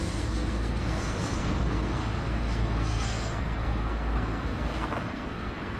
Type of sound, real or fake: fake